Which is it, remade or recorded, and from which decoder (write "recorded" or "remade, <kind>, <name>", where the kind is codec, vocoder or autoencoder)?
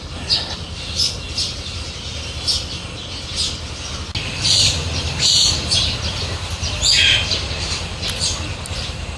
recorded